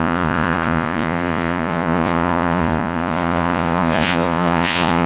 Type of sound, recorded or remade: remade